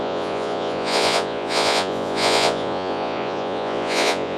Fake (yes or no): yes